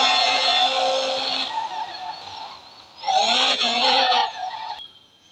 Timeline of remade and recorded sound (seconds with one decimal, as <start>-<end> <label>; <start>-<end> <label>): 0.0-0.5 remade; 0.5-3.5 recorded; 3.5-5.3 remade